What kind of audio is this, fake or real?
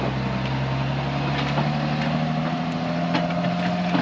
real